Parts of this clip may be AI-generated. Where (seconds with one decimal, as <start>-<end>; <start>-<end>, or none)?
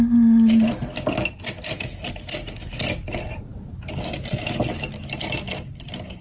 none